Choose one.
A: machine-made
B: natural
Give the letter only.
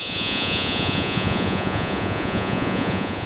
A